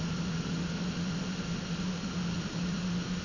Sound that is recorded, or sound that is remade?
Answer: recorded